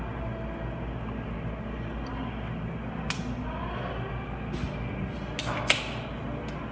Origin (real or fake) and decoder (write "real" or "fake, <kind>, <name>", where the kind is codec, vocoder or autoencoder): real